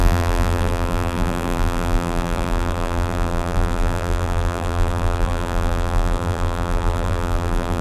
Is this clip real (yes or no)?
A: no